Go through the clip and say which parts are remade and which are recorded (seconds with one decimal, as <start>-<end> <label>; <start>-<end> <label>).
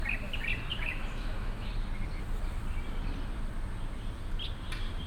0.0-0.7 recorded; 0.7-1.7 remade; 1.7-5.1 recorded